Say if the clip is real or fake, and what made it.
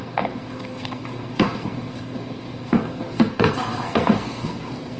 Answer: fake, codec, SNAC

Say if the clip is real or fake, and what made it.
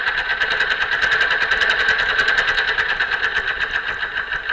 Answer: real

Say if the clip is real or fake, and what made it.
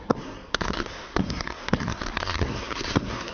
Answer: fake, codec, SNAC